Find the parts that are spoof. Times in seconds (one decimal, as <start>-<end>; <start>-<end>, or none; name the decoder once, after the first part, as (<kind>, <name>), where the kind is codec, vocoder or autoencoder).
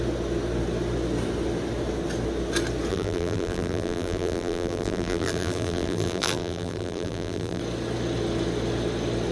2.9-7.6 (vocoder, BigVGAN v2)